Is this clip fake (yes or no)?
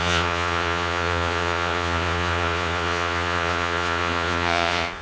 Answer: yes